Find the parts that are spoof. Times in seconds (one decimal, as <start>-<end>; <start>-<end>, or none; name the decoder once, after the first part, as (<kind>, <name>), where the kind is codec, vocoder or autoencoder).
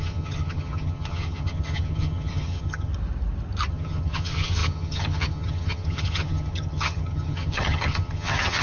0.0-2.9 (vocoder, HiFi-GAN); 3.7-8.6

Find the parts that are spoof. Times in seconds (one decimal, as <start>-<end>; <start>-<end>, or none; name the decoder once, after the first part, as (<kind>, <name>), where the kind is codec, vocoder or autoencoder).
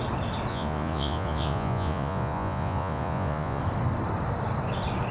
0.5-3.6 (vocoder, Vocos)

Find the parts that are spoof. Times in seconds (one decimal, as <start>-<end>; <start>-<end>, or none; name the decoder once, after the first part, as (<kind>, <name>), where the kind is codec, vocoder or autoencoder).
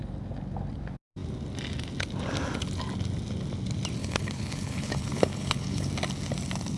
4.0-5.9 (codec, HILCodec)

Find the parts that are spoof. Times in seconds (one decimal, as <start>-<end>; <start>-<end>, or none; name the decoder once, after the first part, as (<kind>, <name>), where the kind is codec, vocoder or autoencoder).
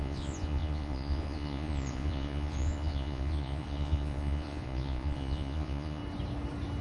0.0-6.0 (vocoder, Vocos)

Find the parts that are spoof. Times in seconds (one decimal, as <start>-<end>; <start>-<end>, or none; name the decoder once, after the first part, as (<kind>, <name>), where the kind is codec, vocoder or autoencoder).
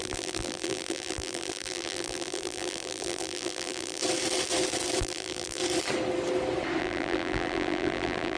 0.0-4.0 (vocoder, BigVGAN v2); 5.0-5.6; 6.8-8.4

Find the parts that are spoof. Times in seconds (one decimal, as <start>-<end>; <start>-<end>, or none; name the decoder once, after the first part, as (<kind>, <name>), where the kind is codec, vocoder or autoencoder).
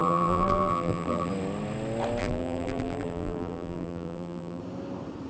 0.0-1.3 (vocoder, BigVGAN v2); 2.2-4.6